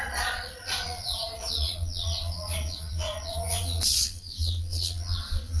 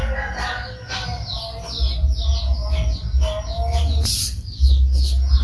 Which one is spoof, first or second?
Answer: first